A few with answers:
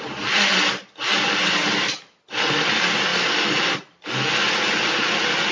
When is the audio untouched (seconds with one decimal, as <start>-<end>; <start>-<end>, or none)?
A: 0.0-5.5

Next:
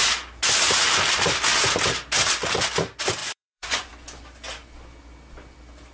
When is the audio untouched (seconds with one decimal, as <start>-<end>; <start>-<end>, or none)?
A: 0.0-3.2; 3.9-5.9

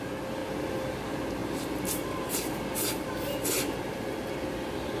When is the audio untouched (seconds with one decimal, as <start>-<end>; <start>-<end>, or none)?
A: 0.0-5.0